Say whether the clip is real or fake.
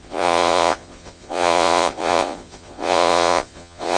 fake